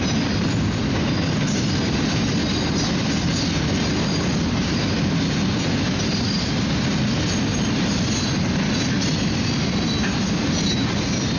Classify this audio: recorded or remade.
recorded